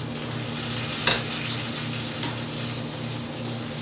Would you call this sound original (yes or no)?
yes